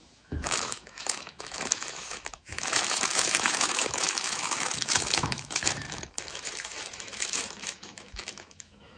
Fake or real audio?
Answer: fake